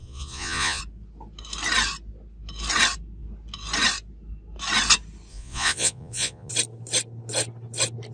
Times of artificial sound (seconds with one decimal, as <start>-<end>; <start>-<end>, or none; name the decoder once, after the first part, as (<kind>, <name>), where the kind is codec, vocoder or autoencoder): 0.0-0.8 (vocoder, Vocos); 5.3-6.5